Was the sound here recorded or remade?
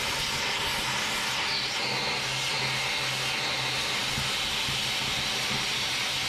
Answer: recorded